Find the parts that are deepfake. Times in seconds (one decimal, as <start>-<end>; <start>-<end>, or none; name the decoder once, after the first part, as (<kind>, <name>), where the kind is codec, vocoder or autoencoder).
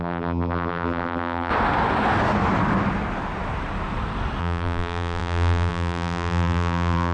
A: 0.0-1.5 (vocoder, BigVGAN v2); 4.4-7.1